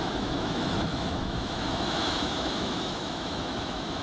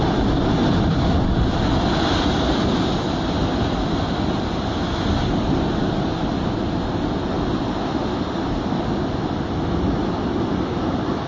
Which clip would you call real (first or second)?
second